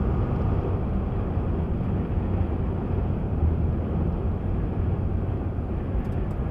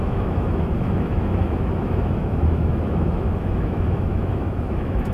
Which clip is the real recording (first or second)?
first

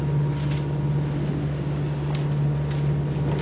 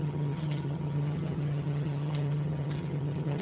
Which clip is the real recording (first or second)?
first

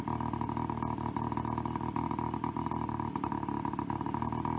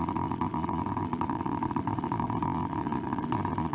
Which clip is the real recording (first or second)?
first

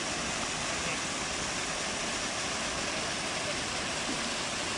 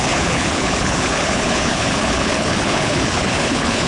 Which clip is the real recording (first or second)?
first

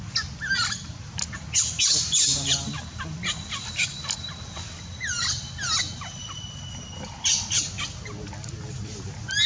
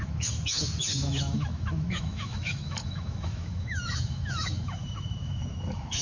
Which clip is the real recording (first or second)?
first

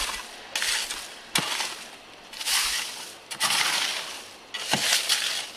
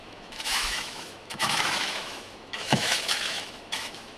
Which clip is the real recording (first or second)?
first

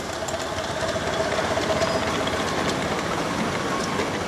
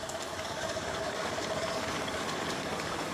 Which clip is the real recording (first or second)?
first